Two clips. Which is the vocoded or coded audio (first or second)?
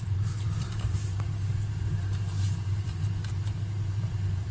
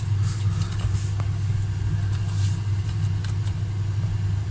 first